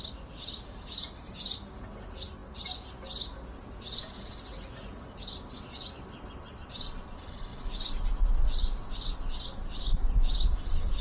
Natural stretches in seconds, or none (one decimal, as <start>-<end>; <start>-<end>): 0.0-11.0